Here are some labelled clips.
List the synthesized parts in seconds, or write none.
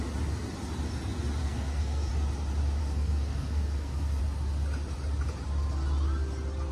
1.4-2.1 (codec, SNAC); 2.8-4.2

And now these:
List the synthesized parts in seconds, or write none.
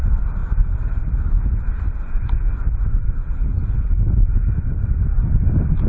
none